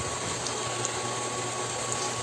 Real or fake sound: real